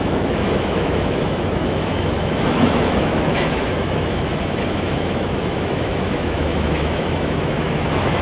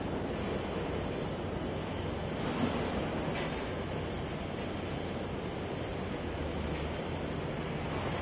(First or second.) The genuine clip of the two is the second